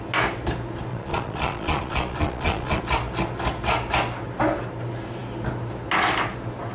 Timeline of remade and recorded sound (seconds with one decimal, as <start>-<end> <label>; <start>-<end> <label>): 0.0-0.9 recorded; 0.9-2.8 remade; 2.8-6.7 recorded